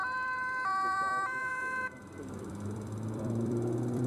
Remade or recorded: remade